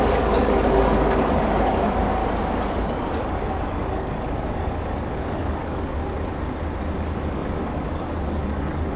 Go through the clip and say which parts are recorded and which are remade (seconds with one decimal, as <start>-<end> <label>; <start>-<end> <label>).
0.0-2.2 remade; 2.2-2.7 recorded; 2.7-6.0 remade; 6.0-7.0 recorded; 7.0-9.0 remade